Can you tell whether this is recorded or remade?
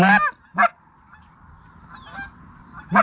recorded